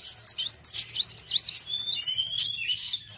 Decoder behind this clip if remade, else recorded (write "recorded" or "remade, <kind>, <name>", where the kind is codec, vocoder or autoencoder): recorded